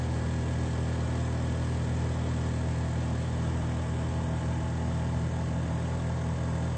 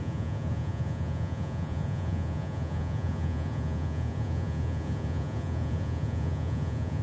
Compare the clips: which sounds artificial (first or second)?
second